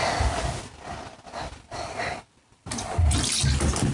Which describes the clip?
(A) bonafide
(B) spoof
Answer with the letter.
A